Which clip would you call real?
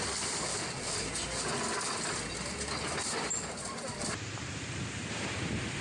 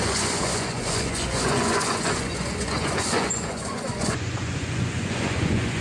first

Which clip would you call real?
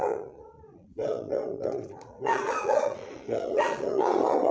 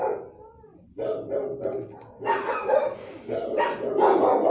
second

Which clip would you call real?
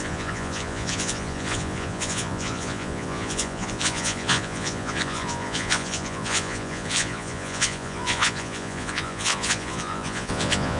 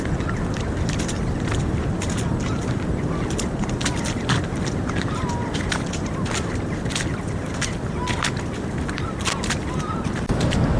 second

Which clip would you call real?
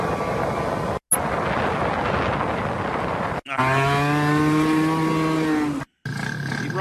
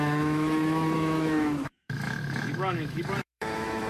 first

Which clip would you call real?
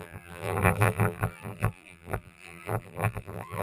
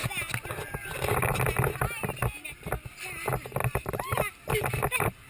second